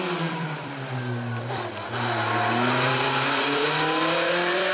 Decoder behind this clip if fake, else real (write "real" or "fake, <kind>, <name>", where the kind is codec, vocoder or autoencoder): fake, vocoder, BigVGAN v2